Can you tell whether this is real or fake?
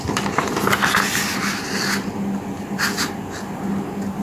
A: real